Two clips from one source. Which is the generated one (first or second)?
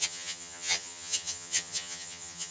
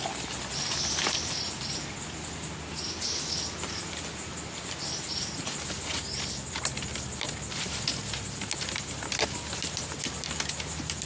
first